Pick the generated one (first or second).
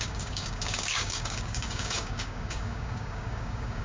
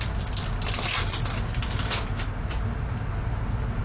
first